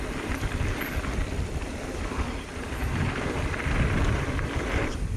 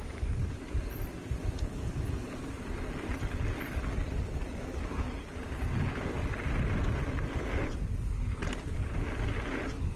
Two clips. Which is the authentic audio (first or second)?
second